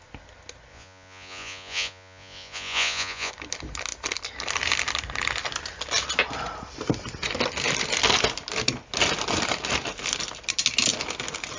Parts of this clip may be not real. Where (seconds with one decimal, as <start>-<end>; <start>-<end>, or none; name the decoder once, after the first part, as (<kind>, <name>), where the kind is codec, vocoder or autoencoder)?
0.7-3.3 (vocoder, Vocos)